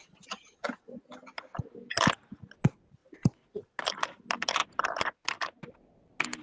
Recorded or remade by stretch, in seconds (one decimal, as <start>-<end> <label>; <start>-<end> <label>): 0.0-0.8 remade; 0.8-3.0 recorded; 3.0-3.8 remade; 3.8-6.4 recorded